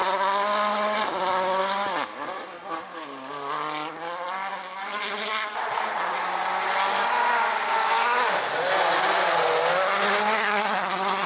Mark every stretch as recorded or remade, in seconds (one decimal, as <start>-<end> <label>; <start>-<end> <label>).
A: 0.0-11.3 recorded